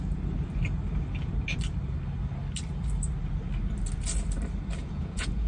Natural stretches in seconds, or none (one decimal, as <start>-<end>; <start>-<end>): 0.0-4.8